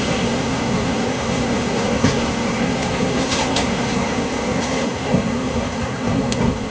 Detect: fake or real fake